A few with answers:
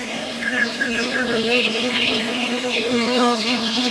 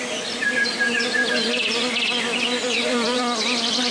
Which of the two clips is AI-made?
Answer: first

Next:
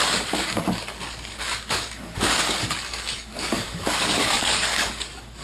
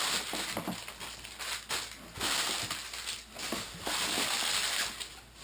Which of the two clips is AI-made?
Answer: first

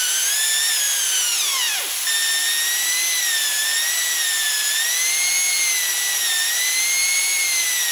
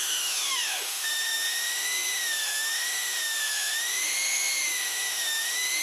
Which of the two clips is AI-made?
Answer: second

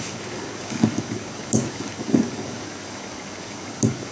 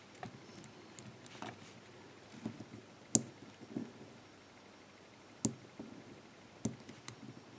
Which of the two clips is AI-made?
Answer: first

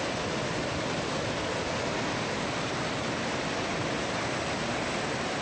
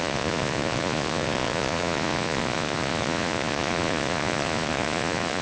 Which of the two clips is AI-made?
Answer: second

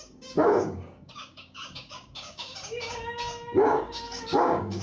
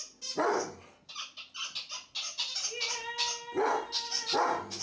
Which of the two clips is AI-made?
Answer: first